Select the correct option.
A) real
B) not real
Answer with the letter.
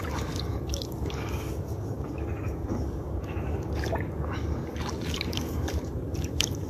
B